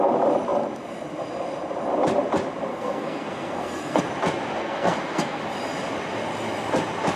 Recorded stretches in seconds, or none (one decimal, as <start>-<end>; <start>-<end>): 0.0-2.7; 4.0-4.6; 5.4-7.2